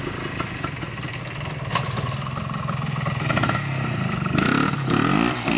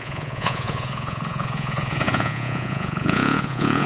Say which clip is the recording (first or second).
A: first